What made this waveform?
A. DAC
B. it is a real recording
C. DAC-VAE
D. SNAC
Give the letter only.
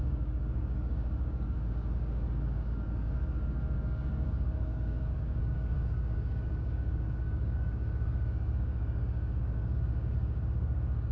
A